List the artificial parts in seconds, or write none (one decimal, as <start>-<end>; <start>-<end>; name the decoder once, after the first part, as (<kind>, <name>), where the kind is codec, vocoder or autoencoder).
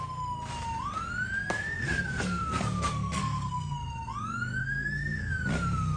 1.6-3.9 (codec, SNAC); 4.6-5.3